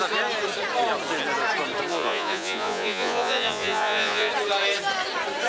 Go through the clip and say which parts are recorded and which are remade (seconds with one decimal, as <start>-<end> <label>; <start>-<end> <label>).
0.0-1.9 recorded; 1.9-4.3 remade; 4.3-5.5 recorded